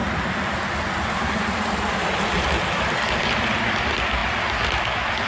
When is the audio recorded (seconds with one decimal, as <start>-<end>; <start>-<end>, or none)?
4.2-5.3